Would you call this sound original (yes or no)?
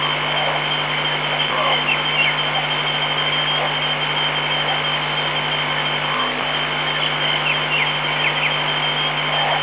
yes